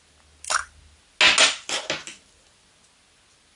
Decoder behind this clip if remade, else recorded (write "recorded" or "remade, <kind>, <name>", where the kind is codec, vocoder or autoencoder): recorded